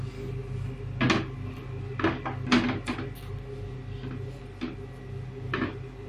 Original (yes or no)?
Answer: yes